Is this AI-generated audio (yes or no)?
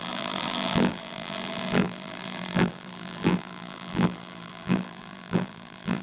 yes